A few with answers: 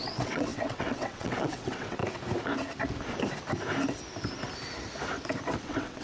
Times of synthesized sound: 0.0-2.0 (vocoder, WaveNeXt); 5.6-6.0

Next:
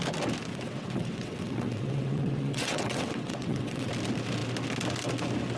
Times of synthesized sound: 0.5-3.9 (vocoder, WaveNeXt)

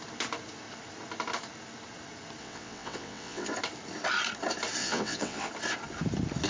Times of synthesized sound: 2.4-3.5 (vocoder, WaveNeXt); 4.8-5.5

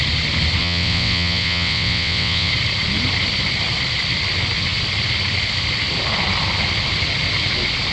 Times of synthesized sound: 0.6-2.5 (vocoder, WaveNeXt)